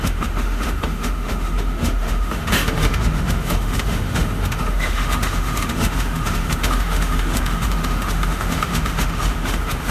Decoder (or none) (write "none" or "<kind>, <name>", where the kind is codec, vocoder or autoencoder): autoencoder, DAC-VAE